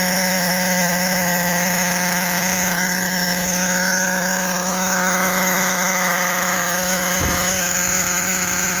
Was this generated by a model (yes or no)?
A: yes